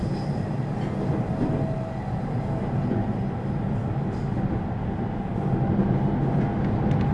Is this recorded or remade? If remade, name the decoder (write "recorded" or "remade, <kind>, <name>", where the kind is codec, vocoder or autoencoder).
recorded